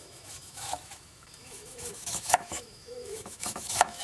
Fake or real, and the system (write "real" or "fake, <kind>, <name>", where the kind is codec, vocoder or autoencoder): fake, autoencoder, DAC-VAE